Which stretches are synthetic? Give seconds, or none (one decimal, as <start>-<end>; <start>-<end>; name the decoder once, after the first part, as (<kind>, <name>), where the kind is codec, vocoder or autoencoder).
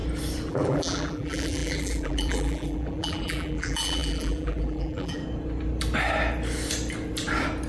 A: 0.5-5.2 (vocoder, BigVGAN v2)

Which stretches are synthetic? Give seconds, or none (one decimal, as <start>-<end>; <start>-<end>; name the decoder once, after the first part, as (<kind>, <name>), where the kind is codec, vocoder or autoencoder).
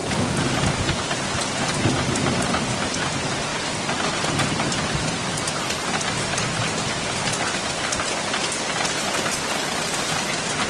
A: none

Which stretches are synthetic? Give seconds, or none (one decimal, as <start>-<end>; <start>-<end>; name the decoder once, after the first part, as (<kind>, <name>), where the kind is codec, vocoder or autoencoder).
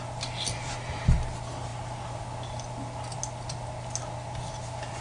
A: none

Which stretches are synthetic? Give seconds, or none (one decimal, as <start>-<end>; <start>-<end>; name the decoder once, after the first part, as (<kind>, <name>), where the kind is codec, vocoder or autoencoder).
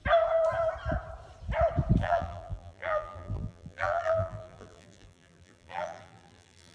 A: 2.0-6.7 (vocoder, BigVGAN v2)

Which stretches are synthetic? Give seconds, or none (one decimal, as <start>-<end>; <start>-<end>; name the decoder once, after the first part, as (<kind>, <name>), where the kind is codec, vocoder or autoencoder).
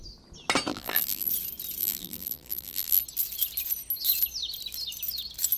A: 0.7-1.3 (vocoder, BigVGAN v2); 1.8-3.0